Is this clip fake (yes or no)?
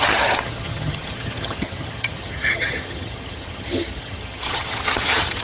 yes